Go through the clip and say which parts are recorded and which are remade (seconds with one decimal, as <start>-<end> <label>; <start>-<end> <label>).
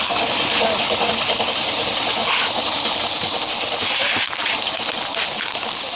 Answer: 0.0-2.2 recorded; 2.2-6.0 remade